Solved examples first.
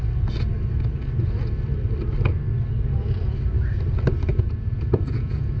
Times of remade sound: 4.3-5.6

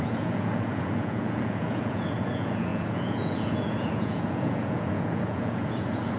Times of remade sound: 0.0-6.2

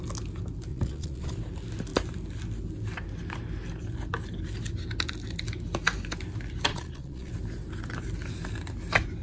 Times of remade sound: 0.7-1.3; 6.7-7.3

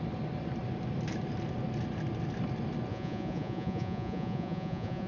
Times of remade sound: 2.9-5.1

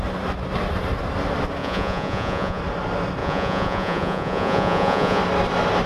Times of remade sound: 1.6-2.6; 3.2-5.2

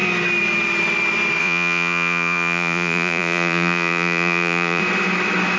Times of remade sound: 1.4-4.8